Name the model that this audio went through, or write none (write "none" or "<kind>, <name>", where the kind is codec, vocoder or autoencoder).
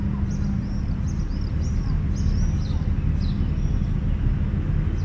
none